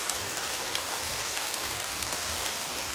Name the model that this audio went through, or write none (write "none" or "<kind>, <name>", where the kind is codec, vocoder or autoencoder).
codec, DAC